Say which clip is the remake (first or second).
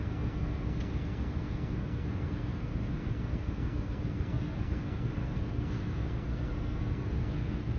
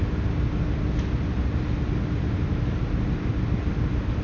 first